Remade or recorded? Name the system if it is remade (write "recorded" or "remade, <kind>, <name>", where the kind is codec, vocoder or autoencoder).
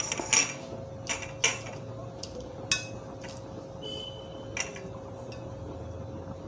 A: recorded